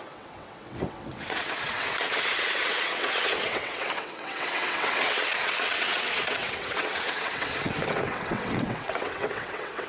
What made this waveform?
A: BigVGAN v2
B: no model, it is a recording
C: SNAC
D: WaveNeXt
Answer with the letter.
D